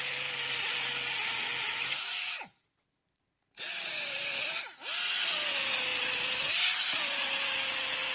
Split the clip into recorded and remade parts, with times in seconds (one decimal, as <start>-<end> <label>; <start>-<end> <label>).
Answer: 0.0-2.1 recorded; 2.1-4.3 remade; 4.3-8.1 recorded